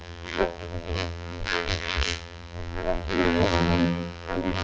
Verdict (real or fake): fake